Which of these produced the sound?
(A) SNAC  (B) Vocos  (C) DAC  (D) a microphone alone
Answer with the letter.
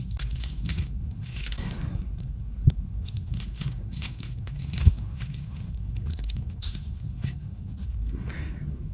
A